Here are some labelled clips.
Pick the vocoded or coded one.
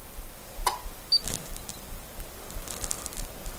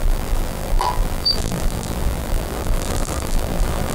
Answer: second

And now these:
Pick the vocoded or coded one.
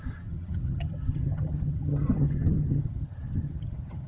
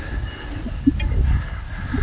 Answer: first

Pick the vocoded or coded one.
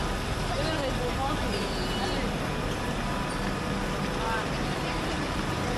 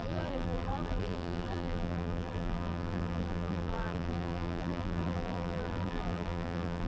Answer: second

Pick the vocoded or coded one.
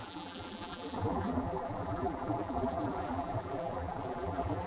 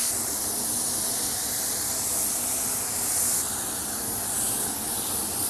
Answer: first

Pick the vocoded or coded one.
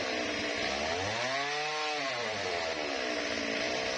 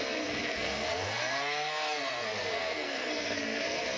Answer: second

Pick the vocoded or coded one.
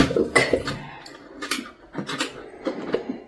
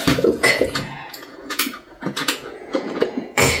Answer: second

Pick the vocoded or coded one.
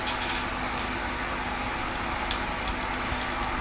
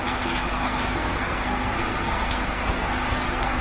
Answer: second